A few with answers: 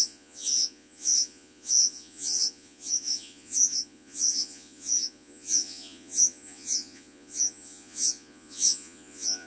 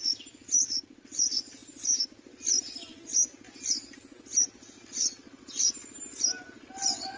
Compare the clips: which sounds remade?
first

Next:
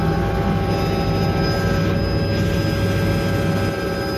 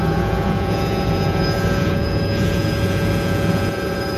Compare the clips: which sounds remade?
second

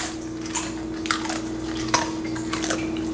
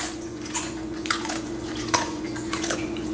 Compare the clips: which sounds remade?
second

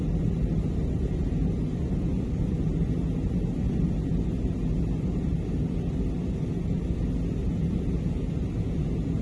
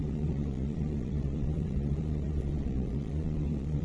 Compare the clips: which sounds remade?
second